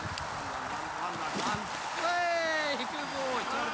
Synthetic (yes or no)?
no